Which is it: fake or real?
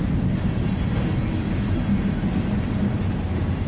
real